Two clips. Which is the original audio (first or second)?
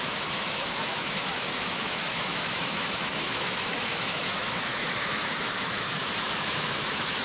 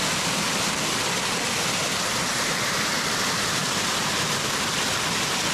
second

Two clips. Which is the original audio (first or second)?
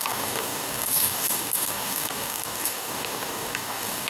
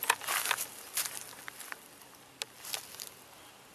second